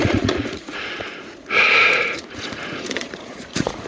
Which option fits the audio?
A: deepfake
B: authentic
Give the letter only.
A